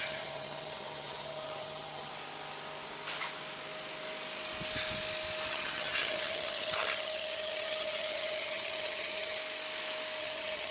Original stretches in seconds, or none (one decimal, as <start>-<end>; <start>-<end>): 2.1-5.5; 9.4-10.2